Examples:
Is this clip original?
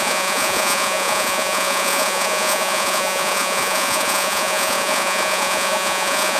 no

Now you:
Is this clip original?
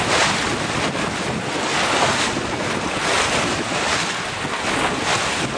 yes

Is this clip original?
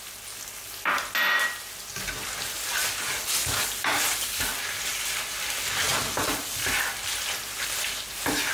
yes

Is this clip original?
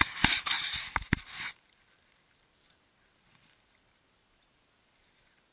yes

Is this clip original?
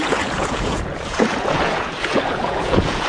no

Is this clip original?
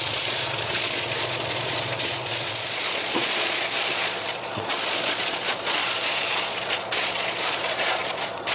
no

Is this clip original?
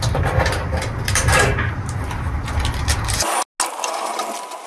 yes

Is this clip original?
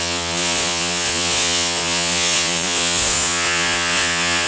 no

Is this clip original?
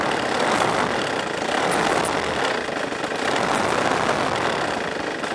yes